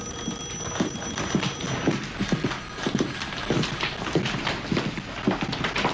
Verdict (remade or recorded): recorded